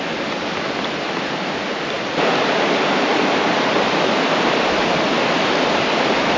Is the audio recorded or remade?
recorded